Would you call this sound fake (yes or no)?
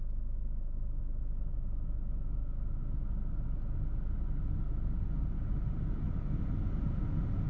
no